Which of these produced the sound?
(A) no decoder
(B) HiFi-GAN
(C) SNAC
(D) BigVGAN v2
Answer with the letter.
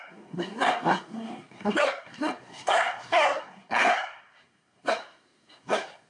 C